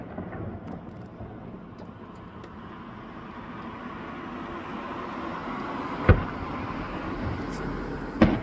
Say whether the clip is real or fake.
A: real